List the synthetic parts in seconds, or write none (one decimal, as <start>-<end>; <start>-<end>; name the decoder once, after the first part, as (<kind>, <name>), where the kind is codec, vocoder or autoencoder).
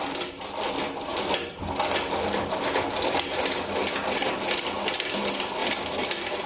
none